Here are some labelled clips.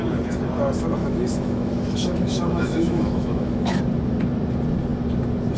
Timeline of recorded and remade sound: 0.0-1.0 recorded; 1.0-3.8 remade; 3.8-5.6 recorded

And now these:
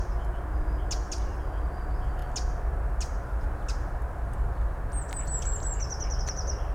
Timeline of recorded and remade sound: 0.0-6.7 recorded